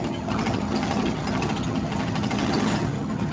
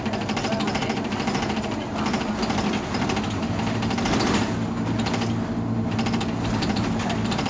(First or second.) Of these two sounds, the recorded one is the second